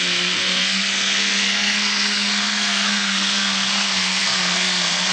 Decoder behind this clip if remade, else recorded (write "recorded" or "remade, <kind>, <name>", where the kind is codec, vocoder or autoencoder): remade, codec, SNAC